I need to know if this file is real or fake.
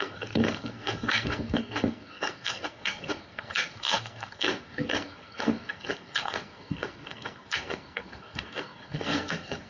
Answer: fake